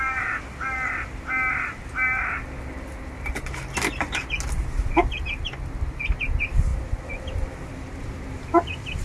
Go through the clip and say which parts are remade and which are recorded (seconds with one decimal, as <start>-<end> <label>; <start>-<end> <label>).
0.0-9.0 recorded